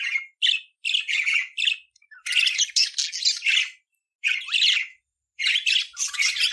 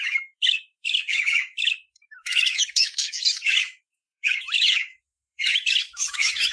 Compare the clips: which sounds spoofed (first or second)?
second